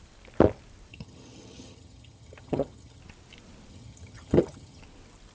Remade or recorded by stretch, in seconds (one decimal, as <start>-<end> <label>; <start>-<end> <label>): 0.0-0.9 recorded; 0.9-3.0 remade; 3.0-3.7 recorded; 3.7-4.8 remade; 4.8-5.3 recorded